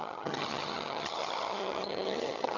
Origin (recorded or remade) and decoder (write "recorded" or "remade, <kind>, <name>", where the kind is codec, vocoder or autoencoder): remade, vocoder, HiFi-GAN